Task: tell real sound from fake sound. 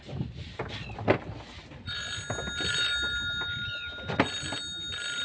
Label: real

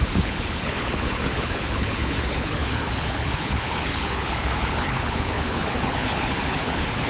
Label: fake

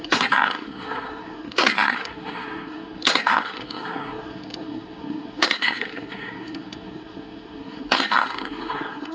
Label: fake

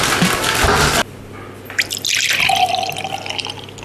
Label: real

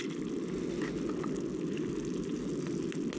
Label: real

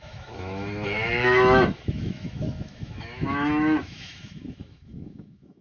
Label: fake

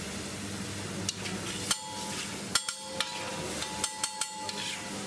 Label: real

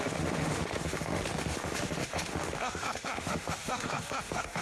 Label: fake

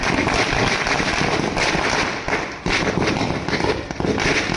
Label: real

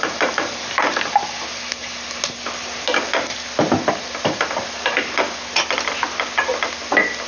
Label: real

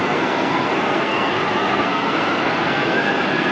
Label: fake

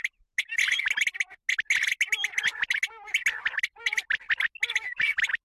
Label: real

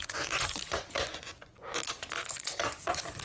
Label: fake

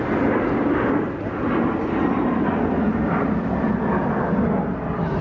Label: real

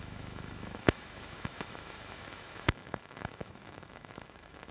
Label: fake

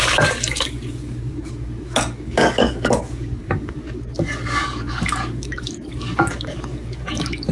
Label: fake